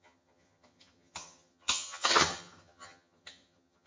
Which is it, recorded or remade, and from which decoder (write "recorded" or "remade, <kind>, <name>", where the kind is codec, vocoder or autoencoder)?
remade, vocoder, HiFi-GAN